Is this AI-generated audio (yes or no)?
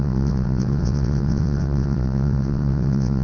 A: yes